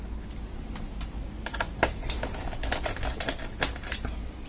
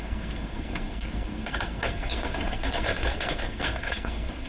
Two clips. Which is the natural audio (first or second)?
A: first